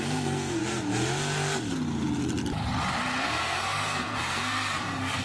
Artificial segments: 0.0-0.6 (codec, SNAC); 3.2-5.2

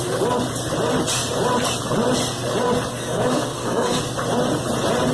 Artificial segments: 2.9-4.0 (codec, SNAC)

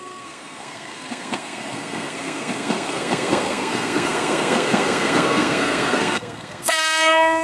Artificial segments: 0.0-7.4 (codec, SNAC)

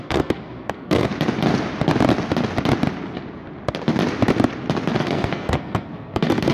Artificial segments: 0.0-1.1 (codec, SNAC); 5.0-6.5

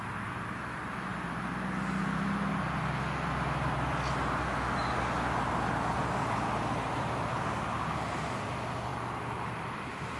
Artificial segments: none

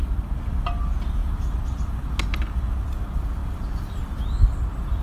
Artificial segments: none